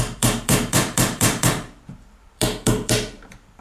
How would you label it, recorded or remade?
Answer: remade